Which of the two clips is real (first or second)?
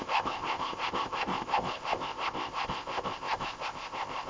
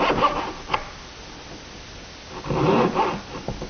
second